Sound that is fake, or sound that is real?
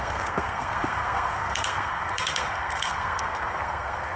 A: fake